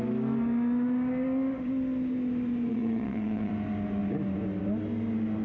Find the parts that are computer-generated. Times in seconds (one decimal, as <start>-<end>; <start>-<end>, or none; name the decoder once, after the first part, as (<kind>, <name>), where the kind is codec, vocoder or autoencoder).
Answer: 2.7-3.5 (vocoder, WaveNeXt)